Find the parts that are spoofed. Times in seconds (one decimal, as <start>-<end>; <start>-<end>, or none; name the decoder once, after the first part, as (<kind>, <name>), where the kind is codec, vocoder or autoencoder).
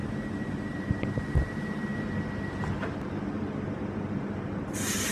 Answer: 0.5-1.9 (vocoder, BigVGAN v2)